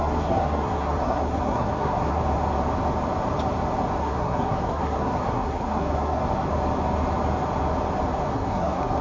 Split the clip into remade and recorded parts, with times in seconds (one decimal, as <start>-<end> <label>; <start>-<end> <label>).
0.0-2.2 remade; 2.2-4.0 recorded; 4.0-6.2 remade; 6.2-8.3 recorded; 8.3-9.0 remade